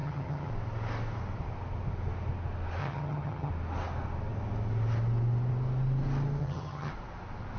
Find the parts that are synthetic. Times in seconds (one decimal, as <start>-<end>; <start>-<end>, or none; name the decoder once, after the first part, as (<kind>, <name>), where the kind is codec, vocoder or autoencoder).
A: 0.0-0.5 (vocoder, HiFi-GAN); 2.8-3.5; 6.4-6.9